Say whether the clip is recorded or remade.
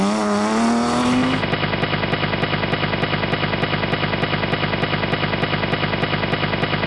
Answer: recorded